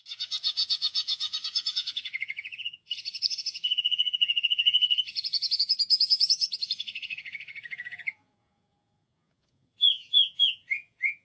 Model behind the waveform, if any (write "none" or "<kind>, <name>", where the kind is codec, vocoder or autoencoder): vocoder, Vocos